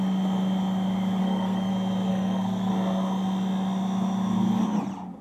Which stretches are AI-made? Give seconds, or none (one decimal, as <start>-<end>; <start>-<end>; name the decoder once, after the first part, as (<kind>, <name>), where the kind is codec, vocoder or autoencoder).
1.2-1.7 (codec, SNAC); 2.1-2.7